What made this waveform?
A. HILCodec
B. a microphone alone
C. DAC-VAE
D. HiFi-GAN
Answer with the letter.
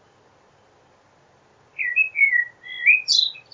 B